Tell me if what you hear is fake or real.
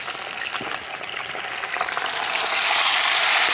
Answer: real